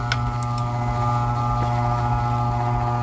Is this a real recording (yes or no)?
yes